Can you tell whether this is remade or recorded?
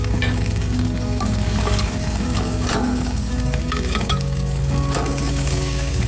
remade